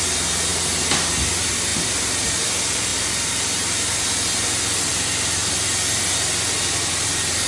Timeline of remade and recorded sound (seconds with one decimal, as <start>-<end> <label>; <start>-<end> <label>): 0.0-7.5 recorded